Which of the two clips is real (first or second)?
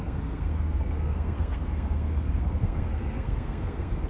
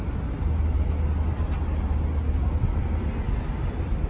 second